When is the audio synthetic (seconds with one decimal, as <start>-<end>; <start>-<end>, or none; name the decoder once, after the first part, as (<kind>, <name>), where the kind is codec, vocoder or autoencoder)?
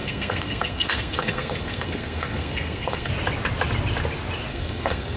0.0-3.1 (codec, SNAC); 4.5-5.2